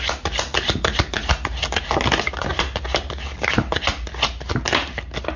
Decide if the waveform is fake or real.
real